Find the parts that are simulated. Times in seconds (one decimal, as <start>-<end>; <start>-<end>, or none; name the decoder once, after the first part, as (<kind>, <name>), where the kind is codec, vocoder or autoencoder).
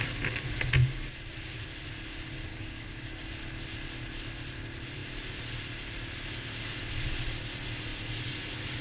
2.5-3.2 (codec, DAC)